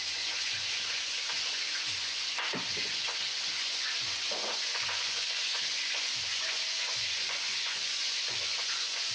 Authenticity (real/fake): fake